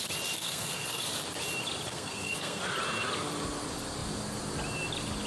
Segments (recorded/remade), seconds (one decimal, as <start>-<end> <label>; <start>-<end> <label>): 0.0-0.4 recorded; 0.4-1.0 remade; 1.0-1.9 recorded; 1.9-2.6 remade; 2.6-5.3 recorded